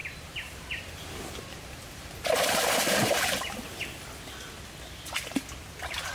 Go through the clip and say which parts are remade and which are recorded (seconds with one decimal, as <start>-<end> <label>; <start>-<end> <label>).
0.0-3.6 remade; 3.6-6.1 recorded